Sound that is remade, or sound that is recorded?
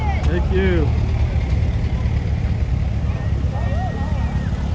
recorded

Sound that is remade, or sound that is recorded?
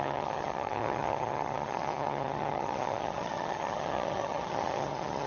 remade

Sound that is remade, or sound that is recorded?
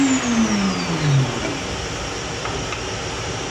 recorded